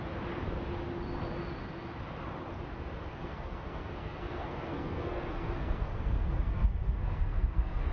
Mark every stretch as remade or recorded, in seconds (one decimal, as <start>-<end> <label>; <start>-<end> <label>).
0.0-3.1 recorded; 3.1-7.9 remade